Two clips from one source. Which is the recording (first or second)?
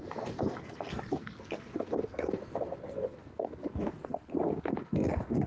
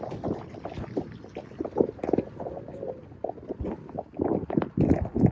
second